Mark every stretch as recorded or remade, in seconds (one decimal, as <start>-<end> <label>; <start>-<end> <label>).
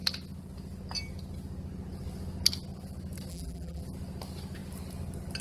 0.0-3.3 recorded; 3.3-3.8 remade; 3.8-5.4 recorded